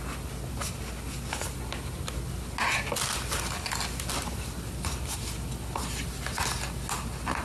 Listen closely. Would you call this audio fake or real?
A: real